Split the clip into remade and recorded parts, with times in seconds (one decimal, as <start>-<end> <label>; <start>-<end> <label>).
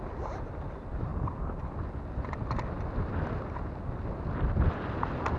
0.0-5.4 recorded